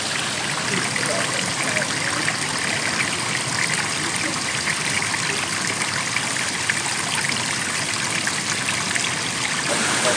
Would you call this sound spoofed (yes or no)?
no